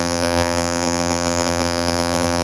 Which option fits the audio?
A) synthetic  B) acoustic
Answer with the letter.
A